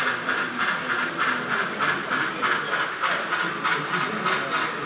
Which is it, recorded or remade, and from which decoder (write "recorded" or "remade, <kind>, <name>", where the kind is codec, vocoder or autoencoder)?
recorded